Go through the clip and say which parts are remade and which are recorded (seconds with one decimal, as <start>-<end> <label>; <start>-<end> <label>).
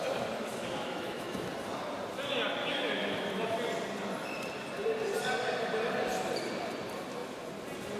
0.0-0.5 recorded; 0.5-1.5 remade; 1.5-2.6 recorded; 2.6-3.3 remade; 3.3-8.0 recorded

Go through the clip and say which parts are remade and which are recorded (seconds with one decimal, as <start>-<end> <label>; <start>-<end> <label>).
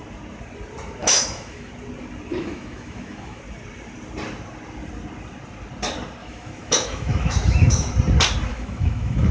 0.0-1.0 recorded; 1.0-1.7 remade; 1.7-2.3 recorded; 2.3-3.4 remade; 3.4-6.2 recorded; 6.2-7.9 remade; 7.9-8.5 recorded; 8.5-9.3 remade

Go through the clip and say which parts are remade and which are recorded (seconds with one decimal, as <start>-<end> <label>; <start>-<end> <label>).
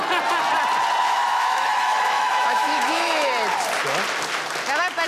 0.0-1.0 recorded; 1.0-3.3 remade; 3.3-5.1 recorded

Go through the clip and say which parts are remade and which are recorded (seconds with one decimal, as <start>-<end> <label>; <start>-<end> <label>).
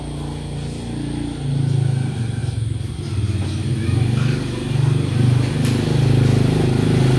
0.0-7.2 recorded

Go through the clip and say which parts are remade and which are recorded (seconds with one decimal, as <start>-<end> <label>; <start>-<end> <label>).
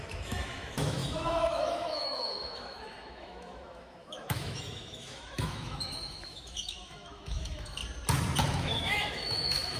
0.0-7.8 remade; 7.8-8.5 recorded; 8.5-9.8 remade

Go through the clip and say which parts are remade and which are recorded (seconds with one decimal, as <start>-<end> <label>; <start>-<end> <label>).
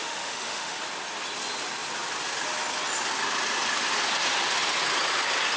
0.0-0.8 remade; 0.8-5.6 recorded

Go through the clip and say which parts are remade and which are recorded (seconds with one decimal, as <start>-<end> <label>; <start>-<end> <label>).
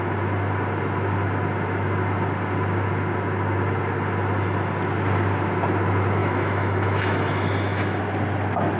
0.0-6.2 recorded; 6.2-8.0 remade; 8.0-8.8 recorded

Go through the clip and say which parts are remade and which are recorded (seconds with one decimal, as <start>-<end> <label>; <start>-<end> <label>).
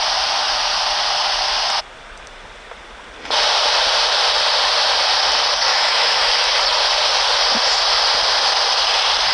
0.0-5.7 recorded; 5.7-6.3 remade; 6.3-9.3 recorded